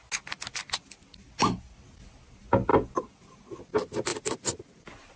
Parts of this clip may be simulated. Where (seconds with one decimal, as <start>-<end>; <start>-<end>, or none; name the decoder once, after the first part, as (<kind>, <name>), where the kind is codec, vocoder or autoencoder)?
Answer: none